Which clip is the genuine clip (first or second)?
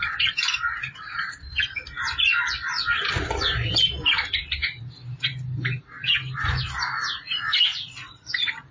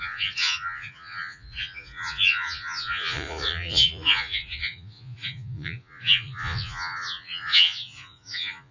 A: first